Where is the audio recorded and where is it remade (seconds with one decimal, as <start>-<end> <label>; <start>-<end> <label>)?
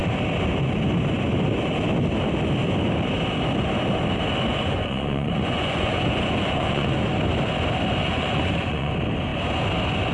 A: 0.0-4.5 recorded; 4.5-7.1 remade; 7.1-8.0 recorded; 8.0-8.9 remade; 8.9-10.1 recorded